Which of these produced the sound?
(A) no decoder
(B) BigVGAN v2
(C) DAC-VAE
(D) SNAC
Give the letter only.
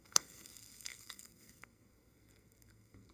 D